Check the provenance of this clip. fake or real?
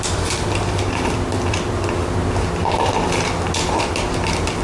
real